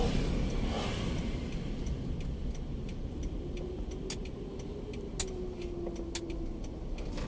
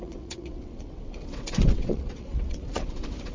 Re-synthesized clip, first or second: second